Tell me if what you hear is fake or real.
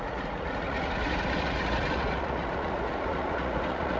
fake